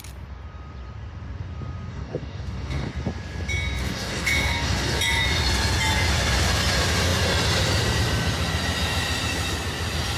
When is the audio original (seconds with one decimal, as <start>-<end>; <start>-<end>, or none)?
0.0-1.9; 2.9-3.8; 5.0-10.2